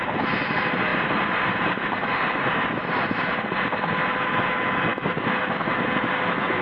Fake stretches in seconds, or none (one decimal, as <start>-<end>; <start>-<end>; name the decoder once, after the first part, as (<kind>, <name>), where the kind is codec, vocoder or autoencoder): 0.9-3.9 (vocoder, BigVGAN v2)